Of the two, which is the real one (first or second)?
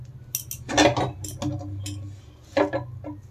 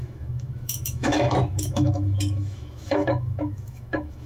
first